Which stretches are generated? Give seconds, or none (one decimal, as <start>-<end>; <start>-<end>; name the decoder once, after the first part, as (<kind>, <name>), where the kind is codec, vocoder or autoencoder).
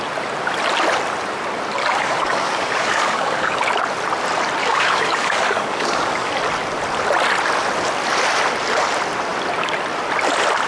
1.8-3.6 (codec, DAC); 4.6-6.3